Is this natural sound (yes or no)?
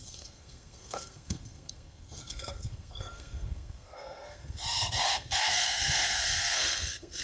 no